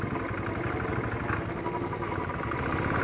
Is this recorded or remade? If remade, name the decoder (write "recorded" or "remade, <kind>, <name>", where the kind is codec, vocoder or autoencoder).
recorded